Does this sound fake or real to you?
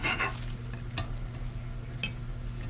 real